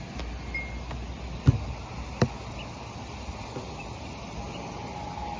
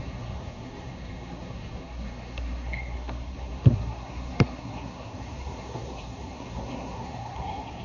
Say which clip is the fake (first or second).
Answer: second